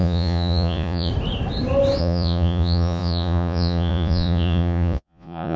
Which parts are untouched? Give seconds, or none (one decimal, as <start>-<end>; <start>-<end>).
1.1-2.0